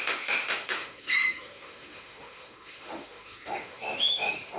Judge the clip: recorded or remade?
remade